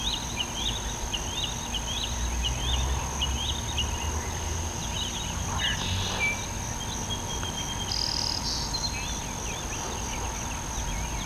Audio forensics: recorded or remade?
recorded